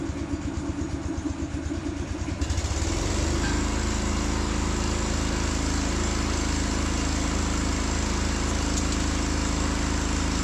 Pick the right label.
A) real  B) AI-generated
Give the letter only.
A